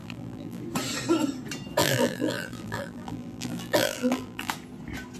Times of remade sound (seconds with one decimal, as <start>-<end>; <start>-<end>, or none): 0.0-0.6; 1.8-4.5